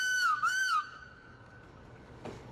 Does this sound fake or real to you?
fake